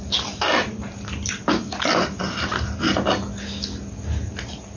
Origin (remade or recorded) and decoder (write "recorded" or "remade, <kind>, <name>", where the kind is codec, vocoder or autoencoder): recorded